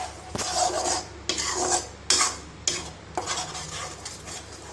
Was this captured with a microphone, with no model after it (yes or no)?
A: yes